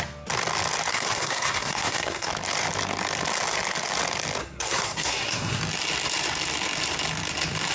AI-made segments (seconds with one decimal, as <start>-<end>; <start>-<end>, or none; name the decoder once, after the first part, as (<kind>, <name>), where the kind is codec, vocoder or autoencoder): 0.9-2.3 (codec, SNAC); 4.4-5.6